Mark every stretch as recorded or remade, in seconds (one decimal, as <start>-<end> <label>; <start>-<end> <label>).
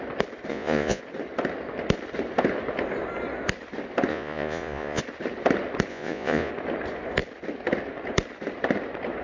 0.0-0.5 recorded; 0.5-1.0 remade; 1.0-4.1 recorded; 4.1-5.0 remade; 5.0-5.9 recorded; 5.9-6.5 remade; 6.5-9.2 recorded